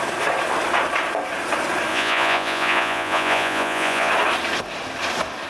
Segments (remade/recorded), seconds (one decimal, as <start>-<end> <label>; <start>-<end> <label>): 0.0-1.9 recorded; 1.9-4.1 remade; 4.1-5.5 recorded